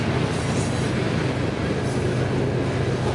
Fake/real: real